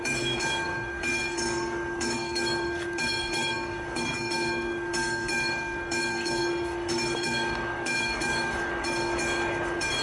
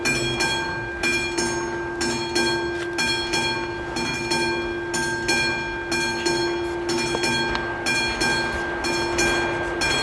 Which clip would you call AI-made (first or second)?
first